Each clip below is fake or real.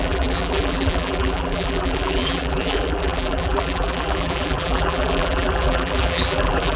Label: fake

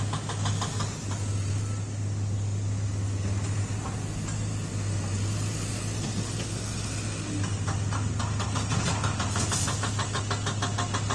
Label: real